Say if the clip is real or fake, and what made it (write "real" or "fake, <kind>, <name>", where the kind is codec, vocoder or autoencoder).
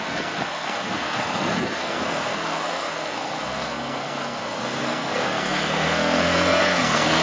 fake, codec, SNAC